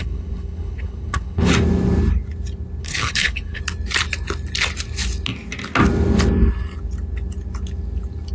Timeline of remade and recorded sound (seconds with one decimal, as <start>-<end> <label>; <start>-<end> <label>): 0.0-1.5 remade; 1.5-2.8 recorded; 2.8-3.6 remade; 3.6-8.3 recorded